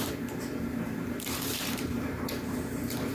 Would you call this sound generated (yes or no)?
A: yes